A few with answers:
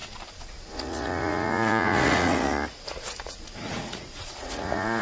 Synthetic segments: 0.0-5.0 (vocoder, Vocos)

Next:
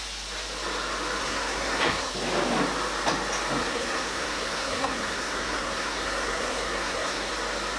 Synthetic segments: 1.2-2.1 (codec, SNAC); 3.6-7.3

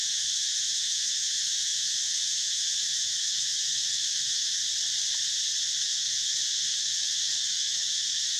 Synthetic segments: 0.0-4.6 (autoencoder, DAC-VAE); 5.8-8.4